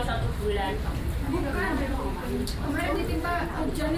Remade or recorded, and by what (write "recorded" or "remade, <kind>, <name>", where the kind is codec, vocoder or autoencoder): recorded